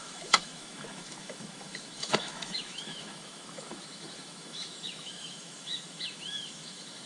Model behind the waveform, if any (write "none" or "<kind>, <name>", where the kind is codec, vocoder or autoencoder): autoencoder, DAC-VAE